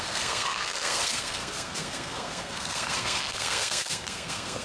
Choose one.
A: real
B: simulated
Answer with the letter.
B